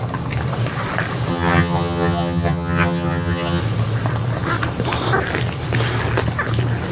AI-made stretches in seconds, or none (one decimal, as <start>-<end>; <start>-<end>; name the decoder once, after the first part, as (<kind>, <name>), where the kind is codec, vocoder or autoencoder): 1.3-3.6 (vocoder, HiFi-GAN)